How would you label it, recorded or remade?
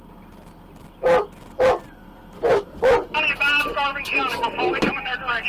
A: recorded